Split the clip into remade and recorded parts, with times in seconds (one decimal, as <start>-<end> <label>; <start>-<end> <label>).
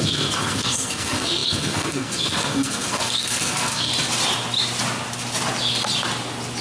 0.0-3.9 remade; 3.9-6.6 recorded